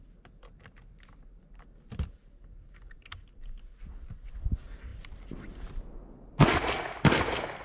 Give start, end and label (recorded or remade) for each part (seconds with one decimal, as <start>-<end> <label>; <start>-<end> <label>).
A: 0.0-7.6 recorded